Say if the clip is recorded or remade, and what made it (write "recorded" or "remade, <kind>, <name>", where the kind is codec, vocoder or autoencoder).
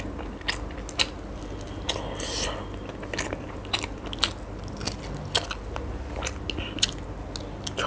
recorded